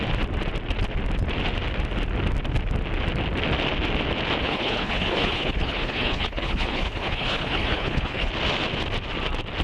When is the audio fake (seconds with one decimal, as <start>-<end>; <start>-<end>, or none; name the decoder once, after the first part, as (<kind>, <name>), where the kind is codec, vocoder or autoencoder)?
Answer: 4.4-8.3 (codec, HILCodec)

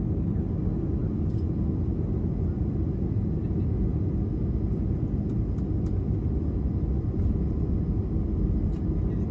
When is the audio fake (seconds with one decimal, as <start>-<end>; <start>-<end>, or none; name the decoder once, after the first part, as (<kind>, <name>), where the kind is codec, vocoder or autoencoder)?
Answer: none

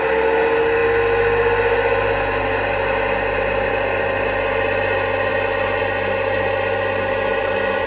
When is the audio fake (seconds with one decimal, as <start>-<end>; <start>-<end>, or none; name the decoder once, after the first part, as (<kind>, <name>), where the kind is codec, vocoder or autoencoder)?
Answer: none